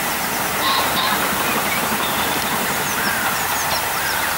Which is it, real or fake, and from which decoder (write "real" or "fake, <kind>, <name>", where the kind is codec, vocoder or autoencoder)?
fake, vocoder, BigVGAN v2